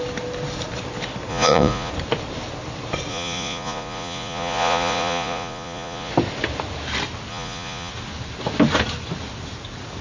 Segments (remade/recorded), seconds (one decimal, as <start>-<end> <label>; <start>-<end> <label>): 0.0-1.3 recorded; 1.3-1.9 remade; 1.9-3.1 recorded; 3.1-6.1 remade; 6.1-7.3 recorded; 7.3-7.9 remade; 7.9-10.0 recorded